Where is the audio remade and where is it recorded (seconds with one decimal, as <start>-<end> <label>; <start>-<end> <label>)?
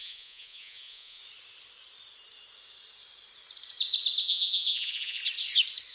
0.0-1.2 remade; 1.2-4.2 recorded; 4.2-5.2 remade; 5.2-5.9 recorded